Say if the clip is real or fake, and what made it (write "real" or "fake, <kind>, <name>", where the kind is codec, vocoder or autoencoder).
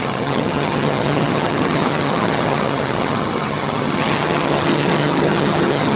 fake, vocoder, HiFi-GAN